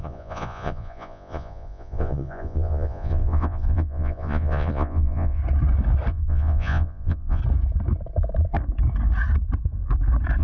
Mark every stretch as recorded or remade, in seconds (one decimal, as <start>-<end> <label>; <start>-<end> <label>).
0.0-5.4 remade; 5.4-6.1 recorded; 6.1-7.4 remade; 7.4-10.4 recorded

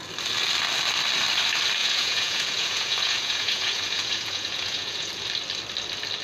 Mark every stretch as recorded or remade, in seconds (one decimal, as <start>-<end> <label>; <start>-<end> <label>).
0.0-1.8 recorded; 1.8-5.1 remade; 5.1-6.2 recorded

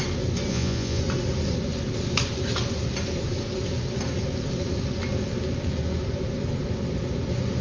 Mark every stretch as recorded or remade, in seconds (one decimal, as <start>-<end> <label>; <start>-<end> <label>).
0.0-0.5 recorded; 0.5-1.0 remade; 1.0-7.6 recorded